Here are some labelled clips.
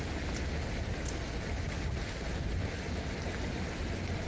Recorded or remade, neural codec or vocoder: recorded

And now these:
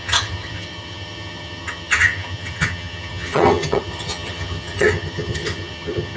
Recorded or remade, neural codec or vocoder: remade, vocoder, HiFi-GAN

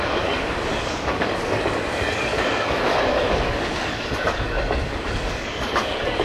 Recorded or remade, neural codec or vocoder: remade, codec, DAC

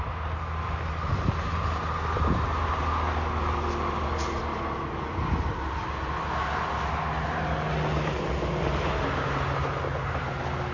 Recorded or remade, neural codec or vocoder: recorded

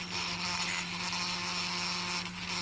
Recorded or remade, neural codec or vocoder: recorded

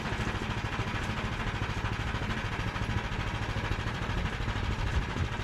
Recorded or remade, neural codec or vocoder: recorded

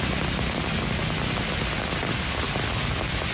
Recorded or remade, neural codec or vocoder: recorded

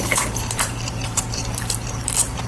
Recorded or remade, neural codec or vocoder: remade, vocoder, BigVGAN v2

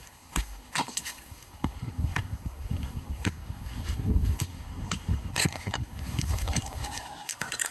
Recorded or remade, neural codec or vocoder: remade, codec, SNAC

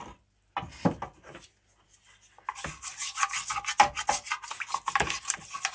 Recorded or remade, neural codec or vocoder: recorded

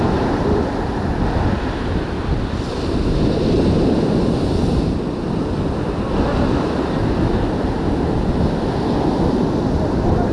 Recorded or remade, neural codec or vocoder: recorded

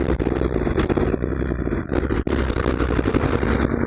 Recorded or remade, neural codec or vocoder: recorded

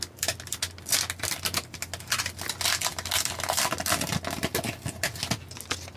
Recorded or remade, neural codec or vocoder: recorded